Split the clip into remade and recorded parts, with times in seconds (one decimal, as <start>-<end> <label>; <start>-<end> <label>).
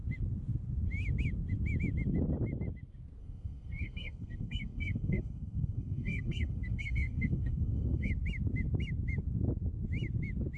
0.0-3.2 recorded; 3.2-8.1 remade; 8.1-10.6 recorded